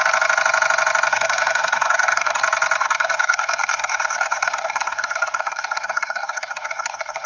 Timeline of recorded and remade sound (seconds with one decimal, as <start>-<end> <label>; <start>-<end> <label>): 0.0-1.1 recorded; 1.1-2.4 remade; 2.4-2.8 recorded; 2.8-7.3 remade